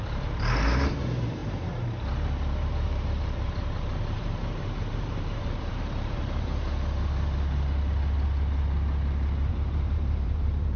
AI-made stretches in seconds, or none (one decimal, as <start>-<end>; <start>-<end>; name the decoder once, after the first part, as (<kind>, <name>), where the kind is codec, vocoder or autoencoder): 0.0-6.5 (vocoder, BigVGAN v2); 9.5-10.8